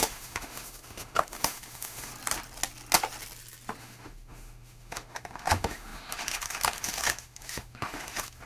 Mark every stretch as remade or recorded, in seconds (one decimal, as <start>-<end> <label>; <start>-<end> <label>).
0.0-2.1 remade; 2.1-3.8 recorded; 3.8-8.5 remade